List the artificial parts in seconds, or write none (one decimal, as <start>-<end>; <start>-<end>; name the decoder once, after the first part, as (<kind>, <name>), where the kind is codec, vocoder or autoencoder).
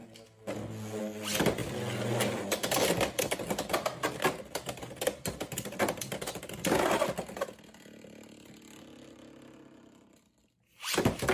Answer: none